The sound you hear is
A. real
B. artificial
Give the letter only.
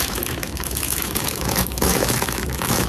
B